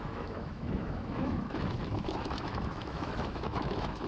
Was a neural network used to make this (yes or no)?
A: yes